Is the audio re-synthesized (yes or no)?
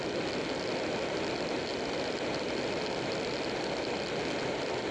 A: no